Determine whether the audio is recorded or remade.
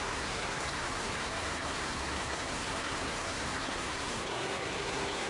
remade